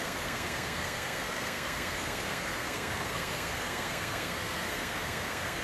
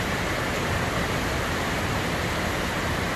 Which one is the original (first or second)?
second